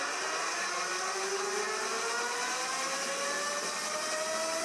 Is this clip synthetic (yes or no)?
no